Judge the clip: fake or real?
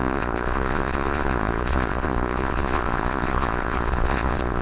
fake